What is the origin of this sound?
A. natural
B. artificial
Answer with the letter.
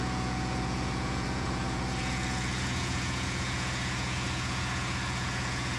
B